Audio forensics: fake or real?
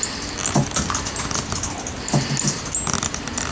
real